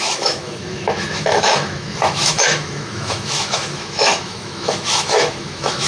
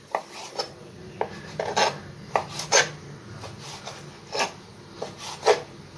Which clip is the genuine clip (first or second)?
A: second